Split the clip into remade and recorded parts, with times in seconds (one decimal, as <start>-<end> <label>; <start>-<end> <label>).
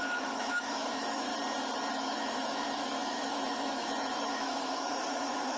0.0-1.3 remade; 1.3-1.9 recorded; 1.9-5.6 remade